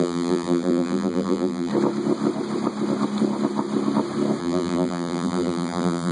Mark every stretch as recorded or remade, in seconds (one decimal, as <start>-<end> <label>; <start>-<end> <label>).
0.0-1.7 remade; 1.7-4.4 recorded; 4.4-6.1 remade